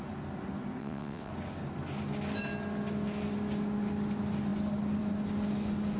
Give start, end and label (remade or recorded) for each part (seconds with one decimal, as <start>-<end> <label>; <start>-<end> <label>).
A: 0.0-0.8 recorded; 0.8-1.3 remade; 1.3-6.0 recorded